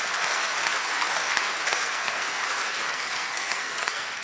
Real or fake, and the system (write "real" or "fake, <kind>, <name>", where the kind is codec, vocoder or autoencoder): fake, codec, SNAC